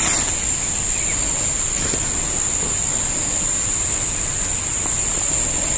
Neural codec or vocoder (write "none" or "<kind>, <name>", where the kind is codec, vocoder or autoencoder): none